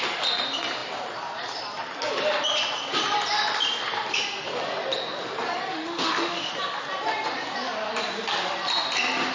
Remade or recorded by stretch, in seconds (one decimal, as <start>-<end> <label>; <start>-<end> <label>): 0.0-5.7 recorded; 5.7-6.5 remade; 6.5-9.3 recorded